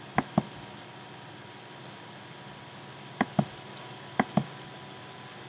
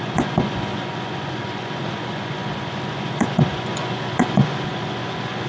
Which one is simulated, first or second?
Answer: second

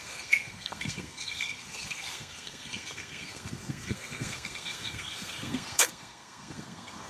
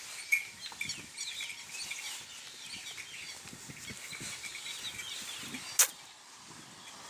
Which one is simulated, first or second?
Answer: first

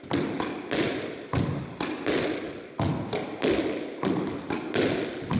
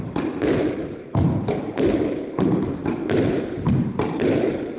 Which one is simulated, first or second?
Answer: second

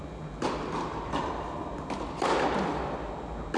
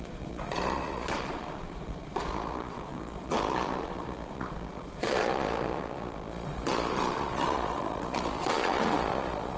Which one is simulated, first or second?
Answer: second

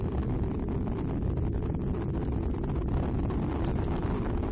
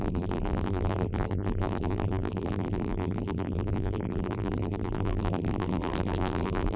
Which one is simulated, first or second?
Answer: second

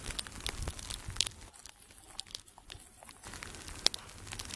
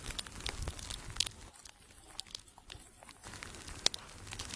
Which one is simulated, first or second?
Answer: second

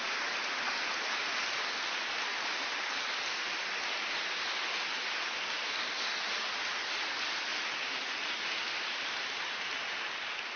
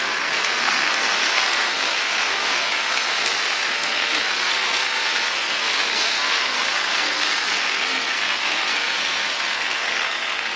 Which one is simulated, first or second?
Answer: second